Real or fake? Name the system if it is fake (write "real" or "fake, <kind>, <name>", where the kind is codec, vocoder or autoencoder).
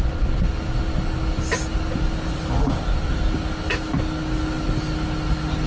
real